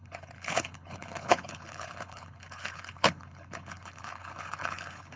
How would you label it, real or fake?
fake